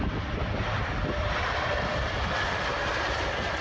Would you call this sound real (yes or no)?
no